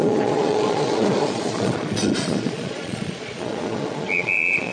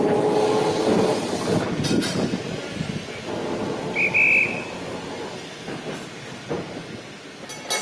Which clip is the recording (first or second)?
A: second